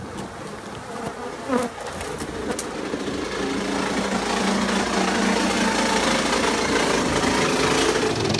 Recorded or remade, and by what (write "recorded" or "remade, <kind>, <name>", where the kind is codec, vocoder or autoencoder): recorded